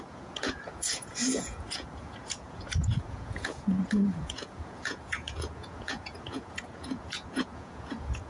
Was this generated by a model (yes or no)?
yes